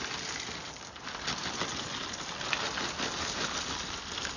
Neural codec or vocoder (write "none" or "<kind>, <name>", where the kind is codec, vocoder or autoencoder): none